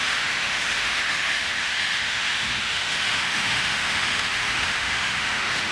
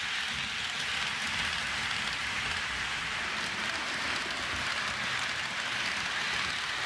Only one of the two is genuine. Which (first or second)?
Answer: second